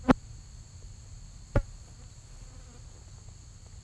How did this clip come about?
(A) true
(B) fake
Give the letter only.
A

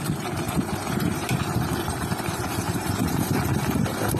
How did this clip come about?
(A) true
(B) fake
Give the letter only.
B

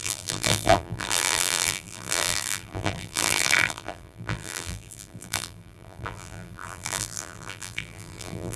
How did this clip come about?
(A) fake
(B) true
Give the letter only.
A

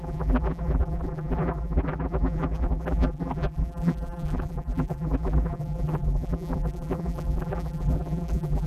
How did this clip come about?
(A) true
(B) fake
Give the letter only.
B